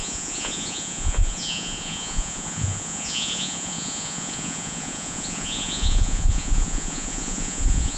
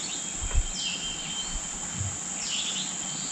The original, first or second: second